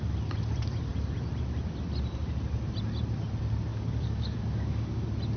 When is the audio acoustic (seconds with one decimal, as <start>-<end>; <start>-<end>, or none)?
0.0-3.7; 5.0-5.4